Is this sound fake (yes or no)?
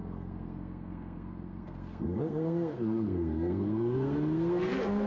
yes